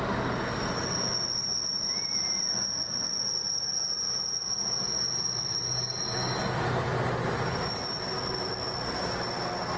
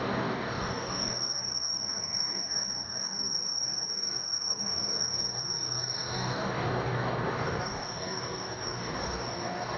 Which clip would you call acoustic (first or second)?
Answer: first